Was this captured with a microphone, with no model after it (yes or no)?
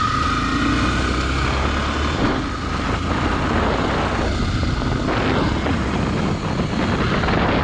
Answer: yes